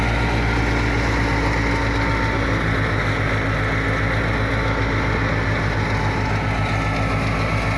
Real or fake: real